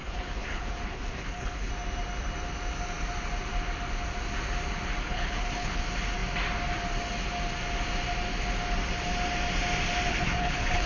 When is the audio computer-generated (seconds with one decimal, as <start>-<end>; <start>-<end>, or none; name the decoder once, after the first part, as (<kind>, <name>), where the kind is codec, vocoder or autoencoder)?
0.0-1.7 (codec, HILCodec); 5.0-5.8; 10.1-10.9